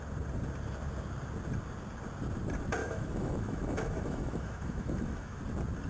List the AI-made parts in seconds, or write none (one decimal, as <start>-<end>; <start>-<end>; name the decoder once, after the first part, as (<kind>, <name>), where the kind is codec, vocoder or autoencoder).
2.8-5.4 (autoencoder, DAC-VAE)